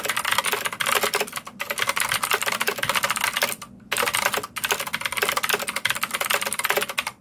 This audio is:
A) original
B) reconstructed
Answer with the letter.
A